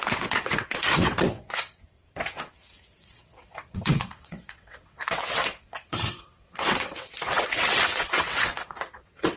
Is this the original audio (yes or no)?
no